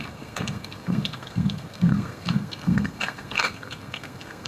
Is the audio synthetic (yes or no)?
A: yes